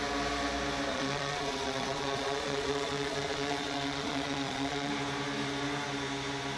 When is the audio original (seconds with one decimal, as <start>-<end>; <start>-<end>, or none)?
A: 0.0-0.9; 4.9-6.6